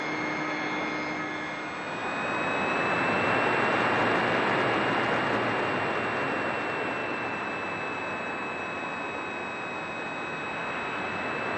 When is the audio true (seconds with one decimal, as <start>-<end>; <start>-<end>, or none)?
0.0-7.0; 7.5-11.6